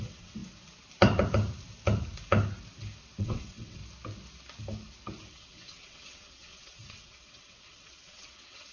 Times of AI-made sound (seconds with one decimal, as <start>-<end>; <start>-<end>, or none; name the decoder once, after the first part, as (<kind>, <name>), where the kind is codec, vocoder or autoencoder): 0.0-0.4 (vocoder, WaveNeXt); 3.2-3.8; 5.3-8.7